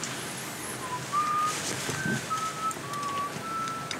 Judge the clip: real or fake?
real